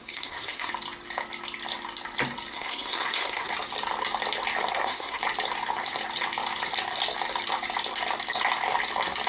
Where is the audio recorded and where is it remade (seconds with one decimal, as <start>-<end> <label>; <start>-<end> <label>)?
0.0-0.7 remade; 0.7-2.5 recorded; 2.5-3.5 remade; 3.5-4.7 recorded; 4.7-5.2 remade; 5.2-9.3 recorded